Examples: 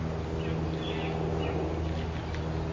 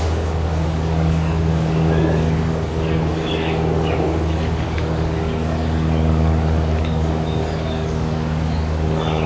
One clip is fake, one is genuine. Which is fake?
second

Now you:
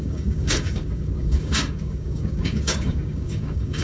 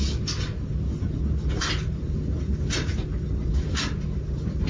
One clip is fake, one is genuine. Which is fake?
first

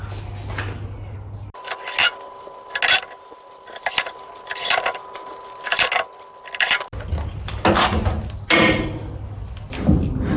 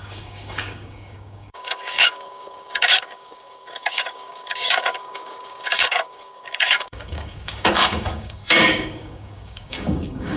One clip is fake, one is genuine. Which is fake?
second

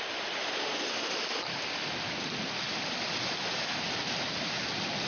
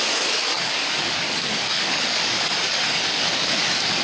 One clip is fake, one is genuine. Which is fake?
second